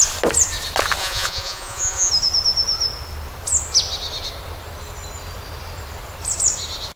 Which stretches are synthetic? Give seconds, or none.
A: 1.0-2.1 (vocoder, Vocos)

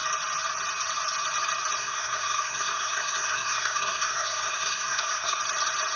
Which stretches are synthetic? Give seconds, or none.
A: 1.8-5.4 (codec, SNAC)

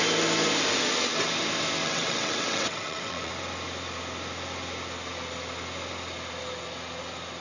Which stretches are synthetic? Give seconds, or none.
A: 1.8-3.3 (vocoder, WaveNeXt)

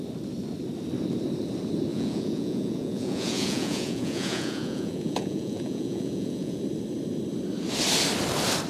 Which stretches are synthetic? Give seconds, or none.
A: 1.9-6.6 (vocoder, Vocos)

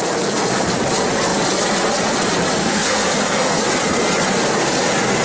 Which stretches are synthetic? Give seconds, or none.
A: 2.6-3.6 (codec, SNAC)

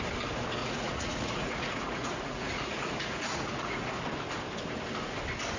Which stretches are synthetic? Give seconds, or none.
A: 0.6-4.0 (vocoder, Vocos)